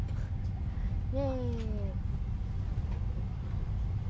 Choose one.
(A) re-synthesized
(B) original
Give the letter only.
B